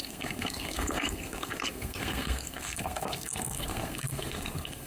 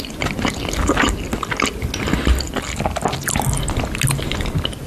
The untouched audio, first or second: second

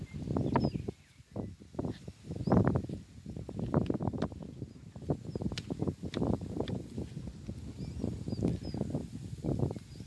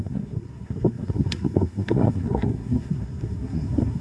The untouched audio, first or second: first